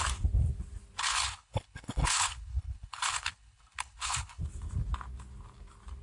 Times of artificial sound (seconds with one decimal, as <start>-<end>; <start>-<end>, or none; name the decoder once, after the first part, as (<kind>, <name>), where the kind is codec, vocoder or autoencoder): 1.0-4.4 (codec, HILCodec)